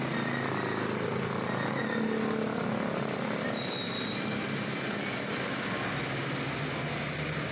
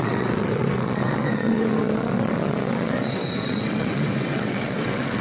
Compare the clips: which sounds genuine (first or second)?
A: first